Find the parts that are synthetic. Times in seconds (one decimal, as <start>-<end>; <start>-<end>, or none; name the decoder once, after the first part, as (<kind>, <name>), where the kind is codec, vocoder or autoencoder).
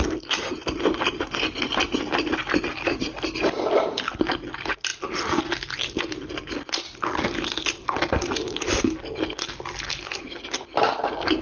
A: none